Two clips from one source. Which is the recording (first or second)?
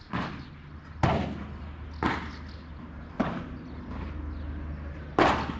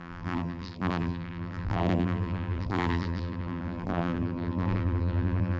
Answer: first